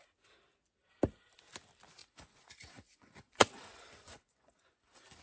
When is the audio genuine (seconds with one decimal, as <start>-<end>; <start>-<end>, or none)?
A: 0.0-2.0

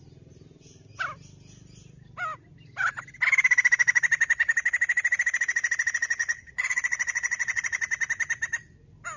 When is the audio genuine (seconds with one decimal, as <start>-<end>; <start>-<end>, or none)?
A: 0.0-6.2; 7.6-9.2

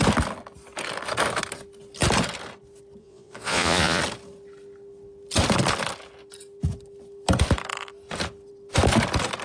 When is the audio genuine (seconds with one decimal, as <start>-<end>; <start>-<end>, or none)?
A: 0.0-3.0; 4.0-9.4

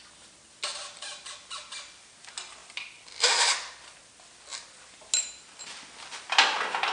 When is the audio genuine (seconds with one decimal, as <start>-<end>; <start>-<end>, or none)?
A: 0.0-6.9

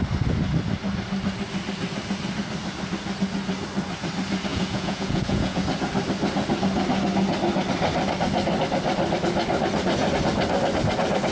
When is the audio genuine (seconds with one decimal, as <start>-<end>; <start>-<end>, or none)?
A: 0.0-4.5; 5.6-11.3

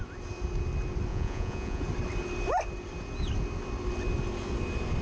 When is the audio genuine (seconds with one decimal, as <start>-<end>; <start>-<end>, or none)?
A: 0.0-1.1; 1.8-5.0